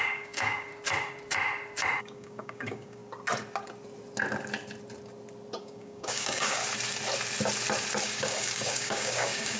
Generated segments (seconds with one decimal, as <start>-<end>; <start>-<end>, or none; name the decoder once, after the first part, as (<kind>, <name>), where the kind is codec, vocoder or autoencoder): 0.0-0.7 (codec, DAC); 2.0-3.0; 5.6-6.6; 8.0-9.6